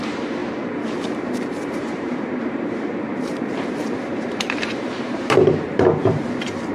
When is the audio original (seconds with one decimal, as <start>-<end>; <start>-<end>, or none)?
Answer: none